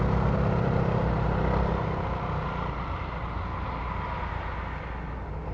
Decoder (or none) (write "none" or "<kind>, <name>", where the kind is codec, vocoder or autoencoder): none